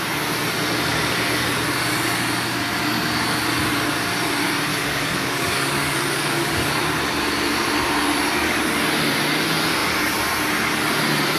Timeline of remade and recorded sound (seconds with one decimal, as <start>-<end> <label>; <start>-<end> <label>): 0.0-4.7 recorded; 4.7-6.7 remade; 6.7-11.4 recorded